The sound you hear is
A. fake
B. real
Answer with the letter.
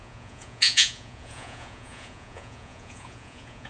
A